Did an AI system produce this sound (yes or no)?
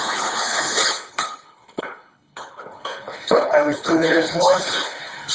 yes